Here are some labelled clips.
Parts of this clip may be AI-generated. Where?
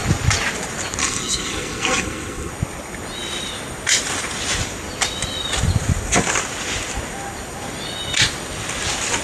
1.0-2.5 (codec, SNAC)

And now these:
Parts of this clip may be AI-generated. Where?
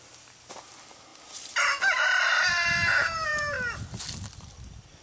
1.1-1.8 (vocoder, BigVGAN v2)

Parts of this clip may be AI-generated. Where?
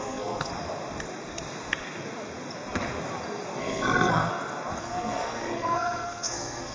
0.0-0.5 (codec, SNAC); 3.6-4.3; 4.8-6.7